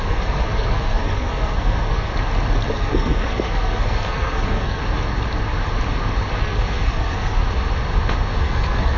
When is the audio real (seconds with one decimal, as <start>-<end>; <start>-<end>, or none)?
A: 2.1-2.7; 4.8-6.4; 7.4-8.4